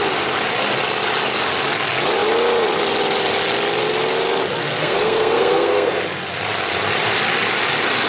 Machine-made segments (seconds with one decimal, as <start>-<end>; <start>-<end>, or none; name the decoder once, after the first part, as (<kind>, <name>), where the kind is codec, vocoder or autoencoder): 4.6-6.0 (codec, SNAC)